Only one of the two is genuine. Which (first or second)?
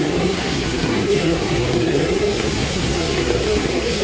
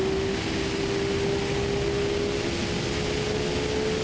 second